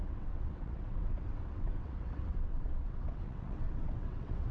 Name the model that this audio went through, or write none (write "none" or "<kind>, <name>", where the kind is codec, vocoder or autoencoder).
vocoder, WaveNeXt